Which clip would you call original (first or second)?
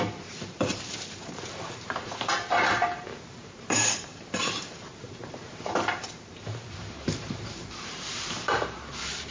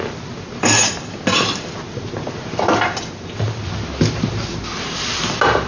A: second